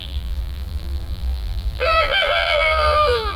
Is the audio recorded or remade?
remade